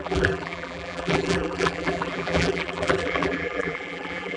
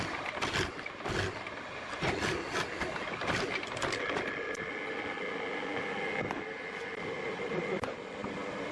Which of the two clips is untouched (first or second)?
second